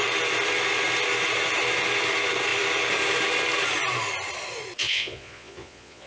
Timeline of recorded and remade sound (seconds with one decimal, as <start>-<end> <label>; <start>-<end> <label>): 0.0-4.8 recorded; 4.8-6.1 remade